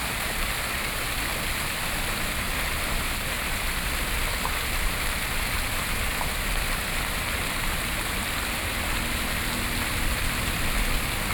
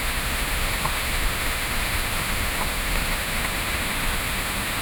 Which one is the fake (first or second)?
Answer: second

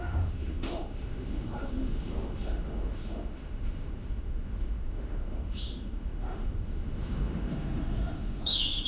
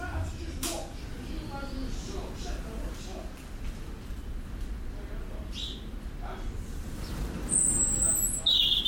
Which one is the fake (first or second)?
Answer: first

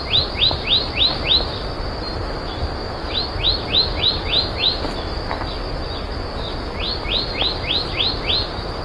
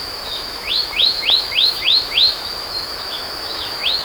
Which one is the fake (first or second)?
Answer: second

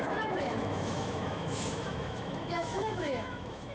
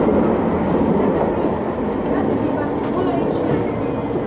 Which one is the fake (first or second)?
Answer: first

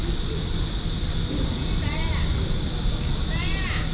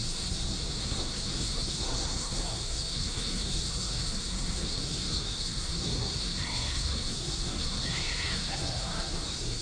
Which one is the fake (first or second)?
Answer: second